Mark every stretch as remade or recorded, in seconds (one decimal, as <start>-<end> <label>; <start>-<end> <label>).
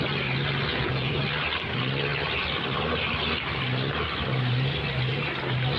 0.0-0.7 recorded; 0.7-1.2 remade; 1.2-5.8 recorded